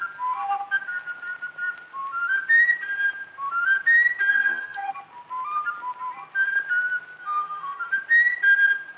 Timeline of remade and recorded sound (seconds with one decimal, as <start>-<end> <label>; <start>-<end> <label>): 0.0-4.3 recorded; 4.3-4.9 remade; 4.9-7.2 recorded; 7.2-7.9 remade; 7.9-9.0 recorded